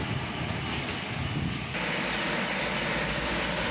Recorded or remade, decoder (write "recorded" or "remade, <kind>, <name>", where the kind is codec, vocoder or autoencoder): recorded